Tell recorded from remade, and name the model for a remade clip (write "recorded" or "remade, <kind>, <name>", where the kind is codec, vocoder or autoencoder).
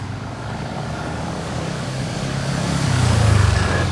remade, codec, DAC